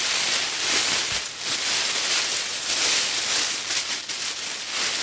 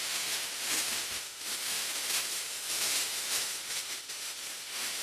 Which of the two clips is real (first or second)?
first